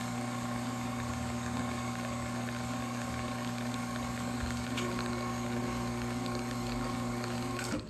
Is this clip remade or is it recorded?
remade